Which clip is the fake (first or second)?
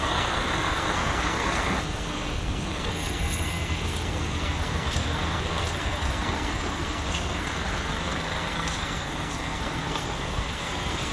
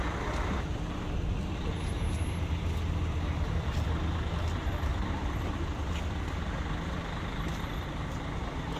first